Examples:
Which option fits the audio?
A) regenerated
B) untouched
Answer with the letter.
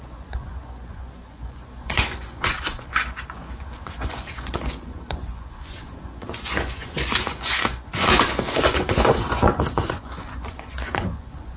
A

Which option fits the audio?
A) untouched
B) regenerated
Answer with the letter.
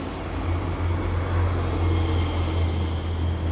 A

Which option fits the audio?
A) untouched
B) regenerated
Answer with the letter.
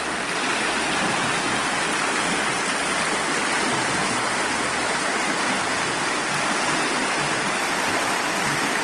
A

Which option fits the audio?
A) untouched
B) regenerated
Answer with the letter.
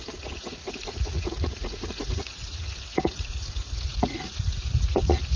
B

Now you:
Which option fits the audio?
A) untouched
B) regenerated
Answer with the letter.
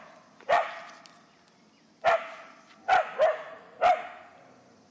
A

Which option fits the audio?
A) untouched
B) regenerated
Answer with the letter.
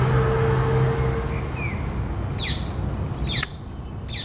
A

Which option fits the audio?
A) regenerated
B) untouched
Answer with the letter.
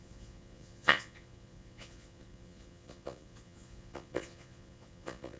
A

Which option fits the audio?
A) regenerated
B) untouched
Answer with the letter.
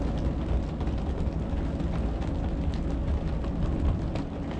B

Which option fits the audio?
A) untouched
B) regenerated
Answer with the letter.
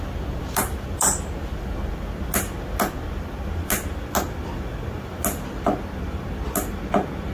A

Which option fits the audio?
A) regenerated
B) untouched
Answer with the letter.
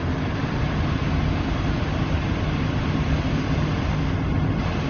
B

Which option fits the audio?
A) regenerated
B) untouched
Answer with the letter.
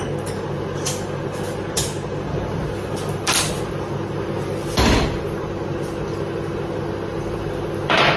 B